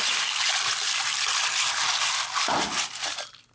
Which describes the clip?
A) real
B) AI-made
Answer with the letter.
A